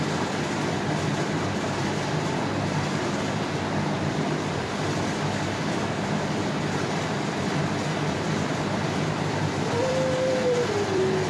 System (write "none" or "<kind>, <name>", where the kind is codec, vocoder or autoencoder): vocoder, BigVGAN v2